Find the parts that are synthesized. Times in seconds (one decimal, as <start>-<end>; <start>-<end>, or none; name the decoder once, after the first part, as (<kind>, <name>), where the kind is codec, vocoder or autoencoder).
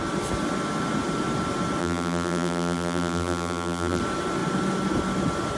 1.8-4.0 (vocoder, BigVGAN v2)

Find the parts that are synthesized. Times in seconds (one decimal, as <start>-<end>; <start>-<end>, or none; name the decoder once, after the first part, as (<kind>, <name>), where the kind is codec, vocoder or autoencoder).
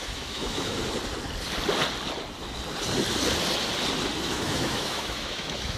0.0-0.8 (autoencoder, DAC-VAE); 4.3-5.8